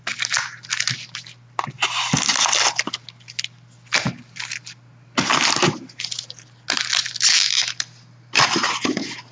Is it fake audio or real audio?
real